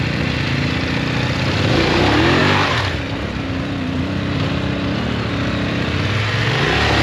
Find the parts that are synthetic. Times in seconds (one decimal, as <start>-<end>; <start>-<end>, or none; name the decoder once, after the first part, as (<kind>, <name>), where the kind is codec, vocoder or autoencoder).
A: none